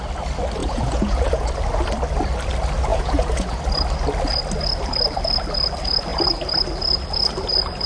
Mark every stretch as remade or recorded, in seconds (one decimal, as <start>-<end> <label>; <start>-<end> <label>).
0.0-0.6 recorded; 0.6-1.5 remade; 1.5-2.9 recorded; 2.9-3.6 remade; 3.6-7.9 recorded